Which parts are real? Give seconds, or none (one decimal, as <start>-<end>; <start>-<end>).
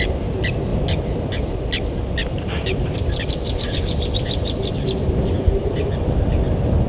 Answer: 0.0-0.7; 1.5-2.2; 6.3-6.9